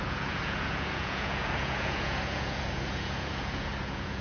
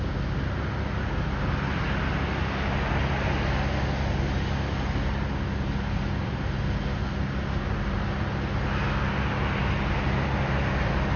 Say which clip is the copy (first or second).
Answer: first